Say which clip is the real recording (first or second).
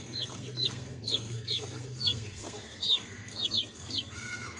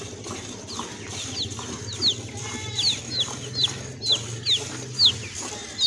second